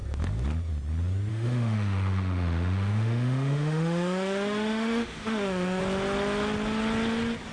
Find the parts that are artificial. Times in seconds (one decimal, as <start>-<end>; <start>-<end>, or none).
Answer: 1.3-5.8